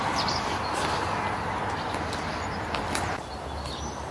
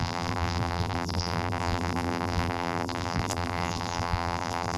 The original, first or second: first